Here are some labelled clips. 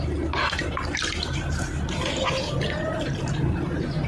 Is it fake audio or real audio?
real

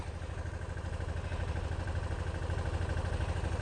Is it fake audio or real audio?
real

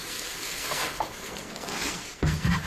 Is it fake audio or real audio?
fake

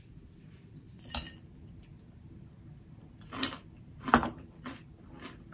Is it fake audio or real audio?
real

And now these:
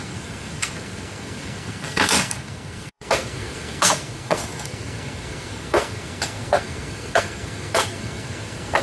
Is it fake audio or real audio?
fake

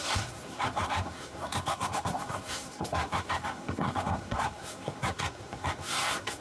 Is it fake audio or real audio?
fake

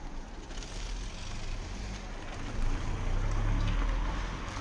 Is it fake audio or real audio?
real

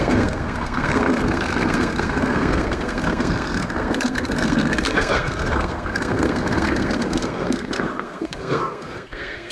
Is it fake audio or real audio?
fake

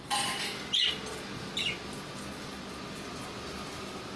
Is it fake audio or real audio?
real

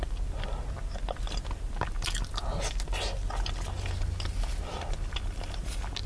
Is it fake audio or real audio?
real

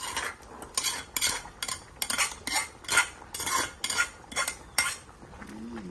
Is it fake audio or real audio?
real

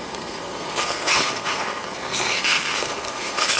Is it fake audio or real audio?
fake